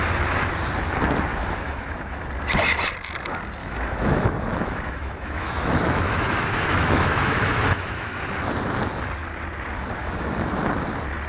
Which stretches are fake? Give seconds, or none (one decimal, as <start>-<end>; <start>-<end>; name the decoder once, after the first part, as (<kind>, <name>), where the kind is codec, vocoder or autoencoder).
1.3-2.3 (autoencoder, DAC-VAE); 3.6-8.2; 10.0-10.6

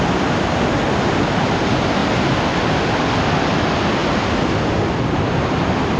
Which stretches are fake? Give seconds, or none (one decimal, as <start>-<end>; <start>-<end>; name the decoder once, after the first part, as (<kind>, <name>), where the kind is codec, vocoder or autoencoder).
none

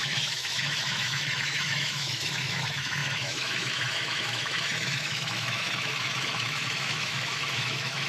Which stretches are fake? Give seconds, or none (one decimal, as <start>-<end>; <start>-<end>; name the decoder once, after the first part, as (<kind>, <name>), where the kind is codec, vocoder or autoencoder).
0.0-8.1 (autoencoder, DAC-VAE)